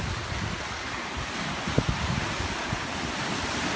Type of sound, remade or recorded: recorded